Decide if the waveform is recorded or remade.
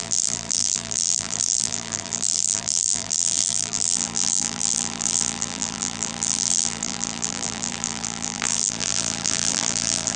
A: remade